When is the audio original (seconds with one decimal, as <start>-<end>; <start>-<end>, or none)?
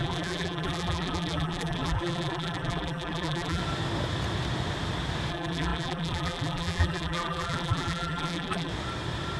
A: 3.6-5.3; 8.7-9.4